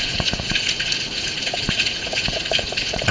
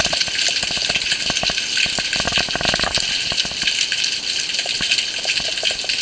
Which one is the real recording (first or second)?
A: second